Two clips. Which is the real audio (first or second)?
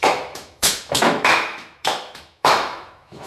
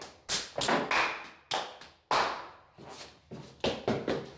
second